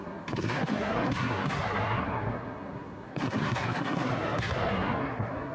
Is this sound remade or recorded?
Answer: remade